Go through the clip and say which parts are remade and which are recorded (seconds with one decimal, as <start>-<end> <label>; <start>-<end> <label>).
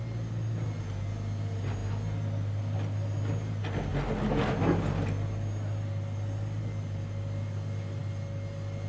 0.0-8.9 recorded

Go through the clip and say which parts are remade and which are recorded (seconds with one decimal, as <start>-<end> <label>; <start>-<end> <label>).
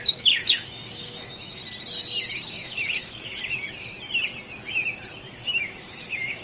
0.0-1.6 remade; 1.6-2.5 recorded; 2.5-3.3 remade; 3.3-5.3 recorded; 5.3-6.4 remade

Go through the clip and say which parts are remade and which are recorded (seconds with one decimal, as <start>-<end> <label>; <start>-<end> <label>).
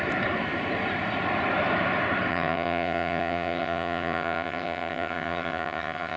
0.0-2.3 recorded; 2.3-6.2 remade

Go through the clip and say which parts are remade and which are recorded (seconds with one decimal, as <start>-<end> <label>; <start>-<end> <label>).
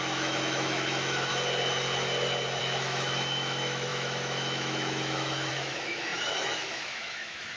0.0-1.3 remade; 1.3-2.6 recorded; 2.6-7.6 remade